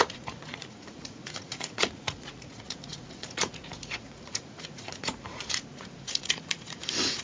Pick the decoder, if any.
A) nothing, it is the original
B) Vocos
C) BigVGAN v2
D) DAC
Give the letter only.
B